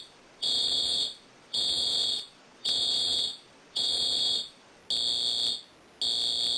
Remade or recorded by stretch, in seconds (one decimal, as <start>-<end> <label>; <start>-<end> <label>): 0.0-4.8 remade; 4.8-6.6 recorded